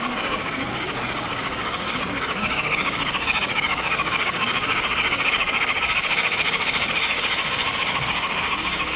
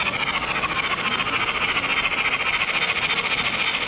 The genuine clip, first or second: second